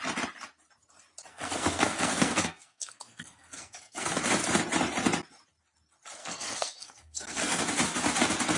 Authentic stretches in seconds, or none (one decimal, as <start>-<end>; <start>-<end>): 0.0-1.3; 4.2-6.2; 7.6-8.6